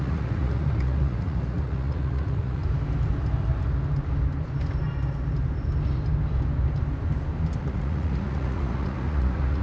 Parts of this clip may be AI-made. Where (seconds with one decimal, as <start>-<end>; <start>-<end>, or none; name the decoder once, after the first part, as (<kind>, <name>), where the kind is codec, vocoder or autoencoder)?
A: 0.0-2.6 (vocoder, Vocos); 7.6-9.6